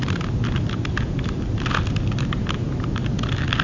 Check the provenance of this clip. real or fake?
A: real